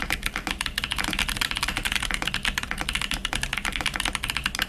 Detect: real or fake real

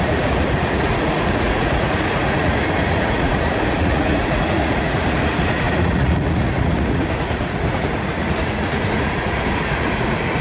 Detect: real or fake fake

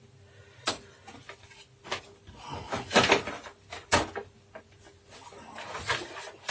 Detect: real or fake real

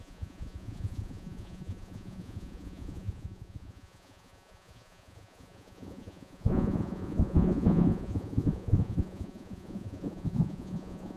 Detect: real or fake fake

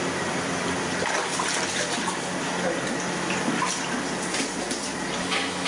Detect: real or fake real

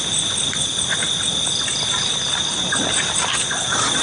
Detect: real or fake real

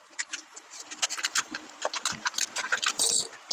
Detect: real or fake real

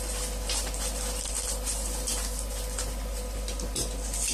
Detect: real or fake real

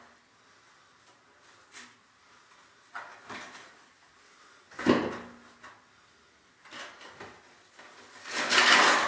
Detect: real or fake real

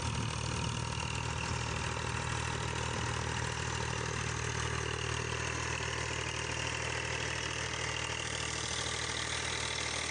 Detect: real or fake real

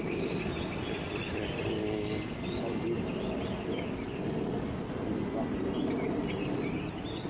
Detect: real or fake real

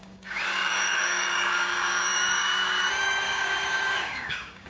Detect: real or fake fake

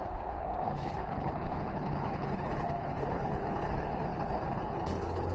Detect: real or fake fake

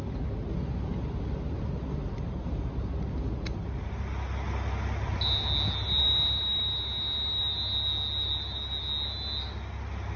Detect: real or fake real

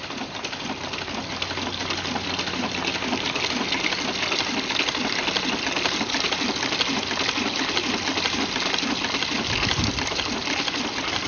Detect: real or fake real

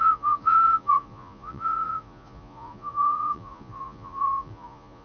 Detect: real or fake fake